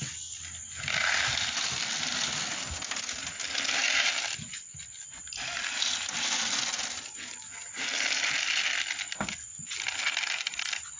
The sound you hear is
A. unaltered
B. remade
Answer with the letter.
A